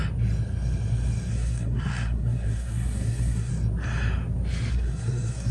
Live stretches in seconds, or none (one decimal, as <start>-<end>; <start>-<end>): 0.0-1.3; 3.5-4.7